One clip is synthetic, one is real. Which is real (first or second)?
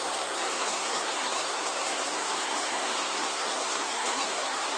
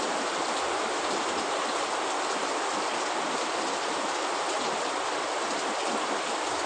second